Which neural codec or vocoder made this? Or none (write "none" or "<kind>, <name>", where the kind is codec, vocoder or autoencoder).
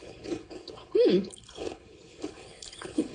codec, HILCodec